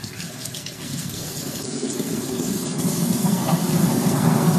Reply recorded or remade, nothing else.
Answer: remade